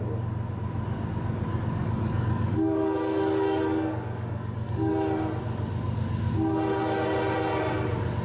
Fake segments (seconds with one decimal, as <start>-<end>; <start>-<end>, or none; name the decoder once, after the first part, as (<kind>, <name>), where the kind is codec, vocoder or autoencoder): 1.8-4.9 (codec, DAC)